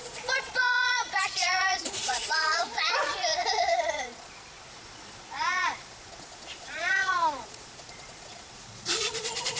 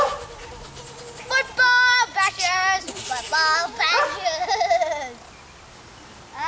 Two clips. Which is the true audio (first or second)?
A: second